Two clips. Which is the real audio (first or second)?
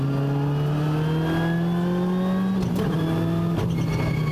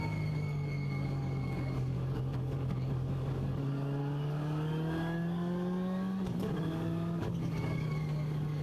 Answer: first